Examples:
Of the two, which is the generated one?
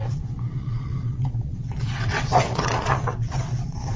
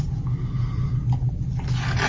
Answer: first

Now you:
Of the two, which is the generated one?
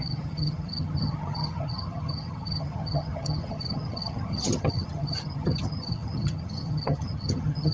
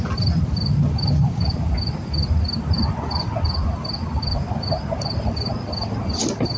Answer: first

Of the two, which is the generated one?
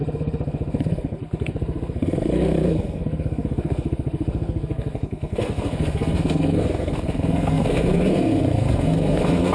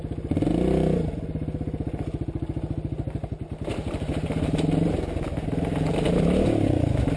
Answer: first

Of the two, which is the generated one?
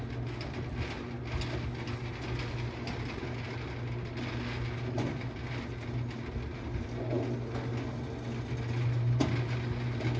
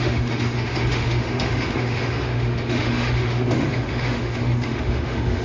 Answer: second